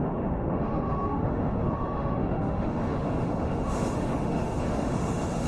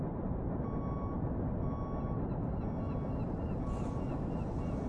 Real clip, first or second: second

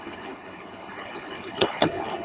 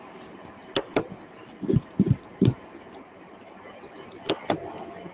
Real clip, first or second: second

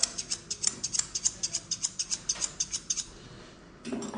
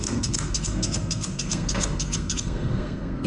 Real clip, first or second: first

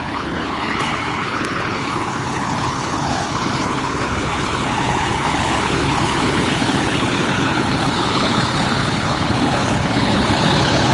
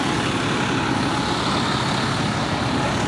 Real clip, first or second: second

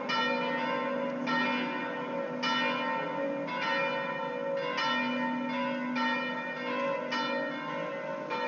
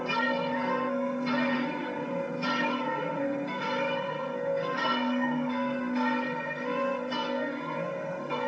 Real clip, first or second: first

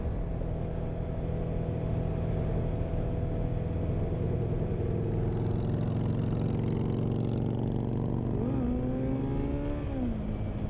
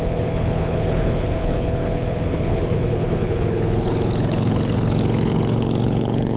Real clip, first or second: first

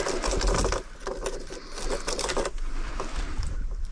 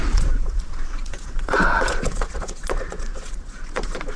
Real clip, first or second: first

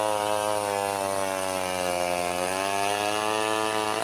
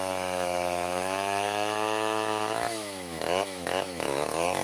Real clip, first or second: first